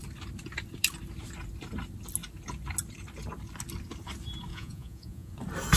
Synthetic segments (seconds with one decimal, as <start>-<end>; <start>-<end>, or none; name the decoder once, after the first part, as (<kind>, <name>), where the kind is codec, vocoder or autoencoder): 4.5-5.3 (vocoder, Vocos)